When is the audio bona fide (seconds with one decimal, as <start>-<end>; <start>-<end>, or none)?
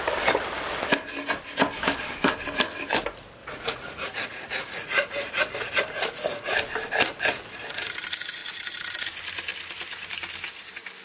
0.0-3.4; 5.8-11.0